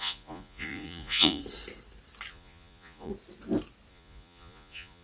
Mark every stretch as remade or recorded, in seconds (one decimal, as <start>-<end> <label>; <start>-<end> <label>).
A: 0.0-1.4 remade; 1.4-2.3 recorded; 2.3-3.1 remade; 3.1-3.9 recorded; 3.9-5.0 remade